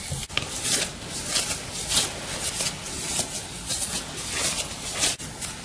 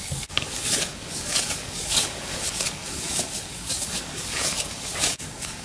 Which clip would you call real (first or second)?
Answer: first